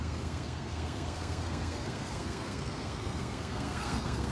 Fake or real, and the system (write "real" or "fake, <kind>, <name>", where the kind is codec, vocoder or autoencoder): fake, codec, SNAC